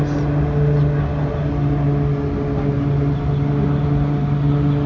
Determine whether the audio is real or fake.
real